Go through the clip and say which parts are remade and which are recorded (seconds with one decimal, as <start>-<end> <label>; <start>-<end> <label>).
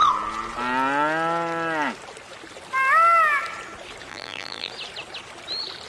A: 0.0-4.1 recorded; 4.1-4.7 remade; 4.7-5.9 recorded